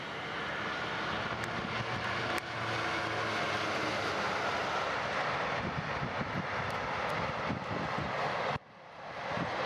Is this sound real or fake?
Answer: real